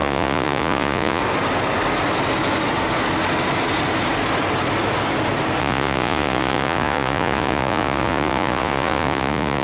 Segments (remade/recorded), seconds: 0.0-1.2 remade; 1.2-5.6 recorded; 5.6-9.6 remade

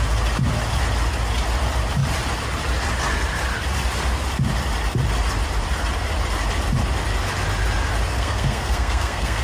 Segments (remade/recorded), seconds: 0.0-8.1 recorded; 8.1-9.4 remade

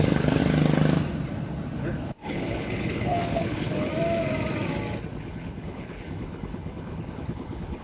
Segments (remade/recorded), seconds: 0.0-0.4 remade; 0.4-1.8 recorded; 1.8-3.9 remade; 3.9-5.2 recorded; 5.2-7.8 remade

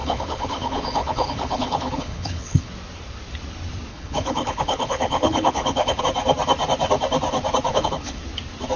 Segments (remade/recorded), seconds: 0.0-2.7 remade; 2.7-3.9 recorded; 3.9-6.0 remade; 6.0-7.7 recorded; 7.7-8.2 remade; 8.2-8.8 recorded

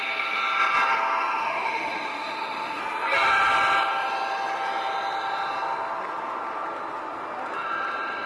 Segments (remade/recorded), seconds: 0.0-1.4 recorded; 1.4-2.8 remade; 2.8-8.3 recorded

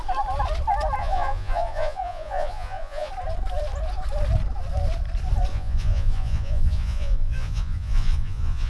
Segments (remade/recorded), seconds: 0.0-1.0 recorded; 1.0-3.1 remade; 3.1-5.5 recorded; 5.5-8.7 remade

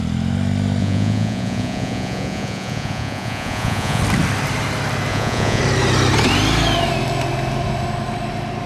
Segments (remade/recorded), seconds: 0.0-0.8 recorded; 0.8-4.0 remade; 4.0-5.1 recorded; 5.1-5.6 remade; 5.6-8.7 recorded